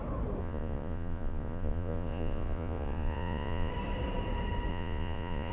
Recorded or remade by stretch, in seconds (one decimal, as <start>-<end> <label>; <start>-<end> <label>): 0.0-0.4 recorded; 0.4-3.7 remade; 3.7-4.7 recorded; 4.7-5.5 remade